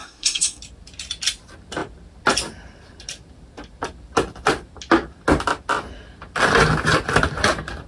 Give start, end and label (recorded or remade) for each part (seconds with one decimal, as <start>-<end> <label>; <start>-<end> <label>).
0.0-0.6 remade; 0.6-7.9 recorded